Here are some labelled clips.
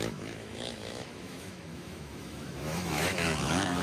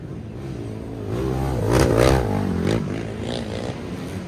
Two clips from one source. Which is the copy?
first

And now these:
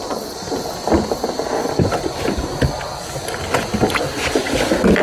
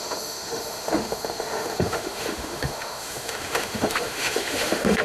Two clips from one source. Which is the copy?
second